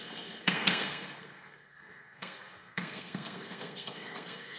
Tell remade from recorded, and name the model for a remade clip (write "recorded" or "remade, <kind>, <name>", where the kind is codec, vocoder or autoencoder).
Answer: remade, codec, SNAC